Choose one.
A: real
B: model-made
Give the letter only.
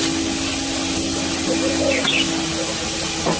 A